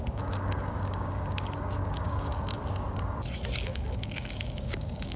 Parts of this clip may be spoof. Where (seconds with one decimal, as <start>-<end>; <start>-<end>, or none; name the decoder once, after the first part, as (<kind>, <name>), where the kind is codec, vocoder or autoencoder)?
0.0-2.6 (codec, DAC); 3.6-5.2